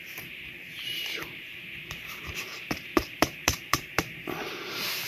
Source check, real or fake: fake